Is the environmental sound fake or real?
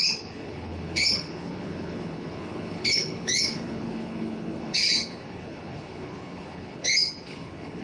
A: fake